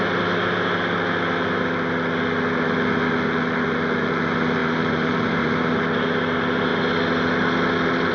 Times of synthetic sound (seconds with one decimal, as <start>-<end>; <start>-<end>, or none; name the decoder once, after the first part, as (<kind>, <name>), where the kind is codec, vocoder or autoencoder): 4.6-5.7 (vocoder, BigVGAN v2)